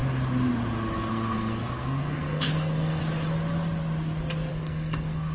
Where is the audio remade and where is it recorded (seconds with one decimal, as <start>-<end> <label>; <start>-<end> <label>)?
0.0-1.1 recorded; 1.1-3.0 remade; 3.0-4.5 recorded; 4.5-5.3 remade